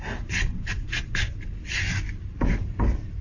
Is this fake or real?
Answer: real